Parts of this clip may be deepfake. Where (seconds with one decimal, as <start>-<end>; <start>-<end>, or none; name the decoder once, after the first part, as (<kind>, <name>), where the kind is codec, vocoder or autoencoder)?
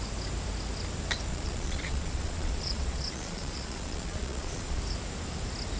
1.3-4.8 (vocoder, Vocos)